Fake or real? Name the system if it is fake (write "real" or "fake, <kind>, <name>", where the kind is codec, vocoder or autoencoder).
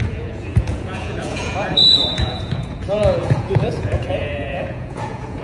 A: fake, vocoder, Vocos